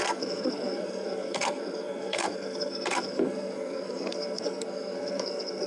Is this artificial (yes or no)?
yes